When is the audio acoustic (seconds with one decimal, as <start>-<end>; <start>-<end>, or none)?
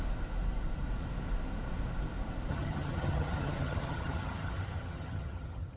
0.0-2.5